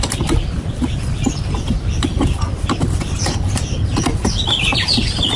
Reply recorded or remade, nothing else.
recorded